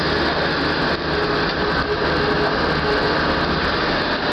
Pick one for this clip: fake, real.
real